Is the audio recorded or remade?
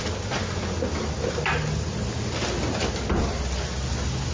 recorded